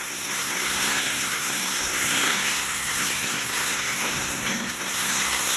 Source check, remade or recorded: remade